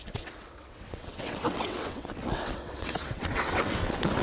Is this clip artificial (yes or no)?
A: yes